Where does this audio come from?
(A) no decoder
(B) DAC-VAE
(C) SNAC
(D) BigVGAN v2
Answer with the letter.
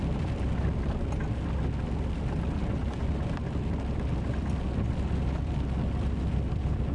A